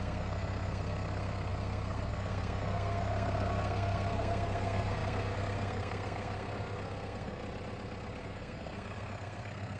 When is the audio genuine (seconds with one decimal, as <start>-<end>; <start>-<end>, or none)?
7.4-8.2